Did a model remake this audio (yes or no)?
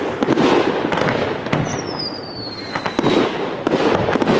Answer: no